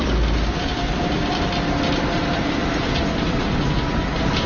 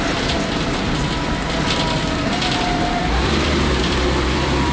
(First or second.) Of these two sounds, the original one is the first